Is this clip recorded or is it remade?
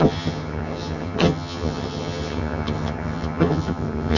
remade